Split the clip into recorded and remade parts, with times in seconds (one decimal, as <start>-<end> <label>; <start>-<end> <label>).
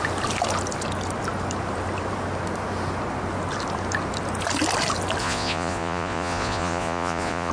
0.0-5.2 recorded; 5.2-7.5 remade